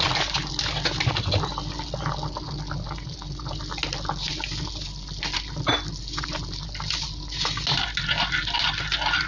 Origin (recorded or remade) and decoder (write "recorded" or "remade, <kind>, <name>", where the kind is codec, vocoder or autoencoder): recorded